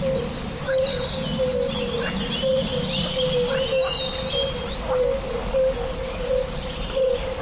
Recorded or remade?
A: recorded